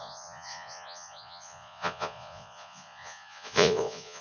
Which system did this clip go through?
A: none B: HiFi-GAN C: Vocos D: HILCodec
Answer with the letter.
C